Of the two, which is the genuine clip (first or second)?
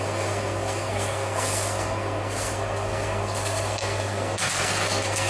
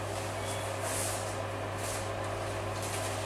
second